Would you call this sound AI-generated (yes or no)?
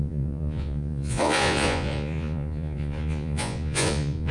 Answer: yes